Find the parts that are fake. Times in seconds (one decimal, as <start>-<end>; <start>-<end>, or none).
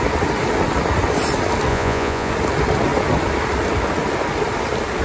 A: 1.7-2.3